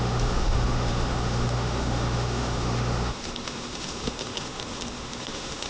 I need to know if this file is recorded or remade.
remade